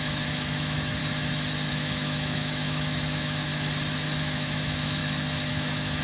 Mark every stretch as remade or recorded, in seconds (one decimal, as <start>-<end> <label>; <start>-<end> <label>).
0.0-1.0 remade; 1.0-1.7 recorded; 1.7-3.5 remade; 3.5-4.2 recorded; 4.2-5.0 remade; 5.0-5.5 recorded; 5.5-6.0 remade

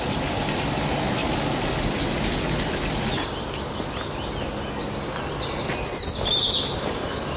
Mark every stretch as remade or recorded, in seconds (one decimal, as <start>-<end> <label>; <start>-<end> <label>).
0.0-7.4 recorded

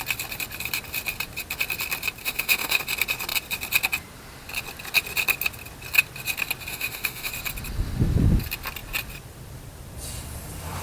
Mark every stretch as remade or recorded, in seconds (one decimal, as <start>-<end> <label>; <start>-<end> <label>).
0.0-2.2 recorded; 2.2-2.8 remade; 2.8-6.7 recorded; 6.7-7.3 remade; 7.3-10.8 recorded